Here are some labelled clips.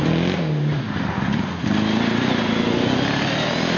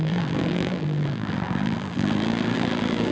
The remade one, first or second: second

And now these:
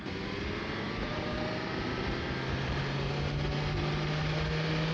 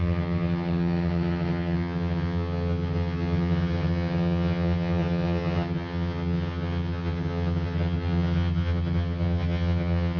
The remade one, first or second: second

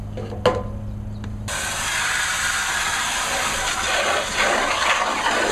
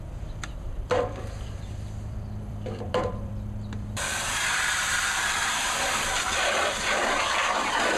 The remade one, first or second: second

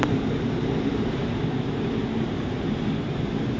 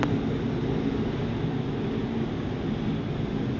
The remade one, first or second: first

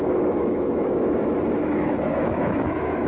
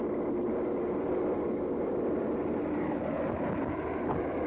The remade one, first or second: first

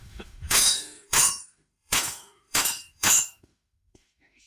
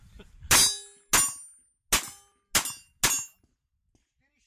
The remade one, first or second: first